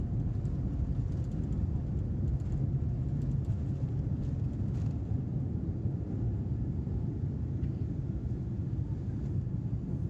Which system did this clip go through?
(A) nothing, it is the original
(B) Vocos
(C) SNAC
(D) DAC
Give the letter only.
A